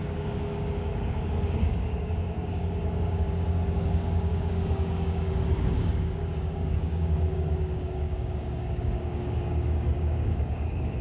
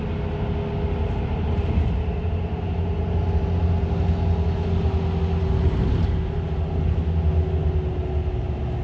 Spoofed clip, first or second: first